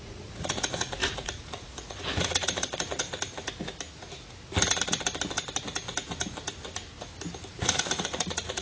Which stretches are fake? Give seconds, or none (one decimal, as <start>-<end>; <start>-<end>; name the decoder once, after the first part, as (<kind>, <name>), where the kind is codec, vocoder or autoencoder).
0.0-3.0 (vocoder, Vocos); 7.5-8.6